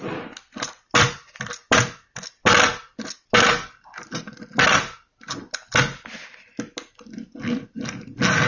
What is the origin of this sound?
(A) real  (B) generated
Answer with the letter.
A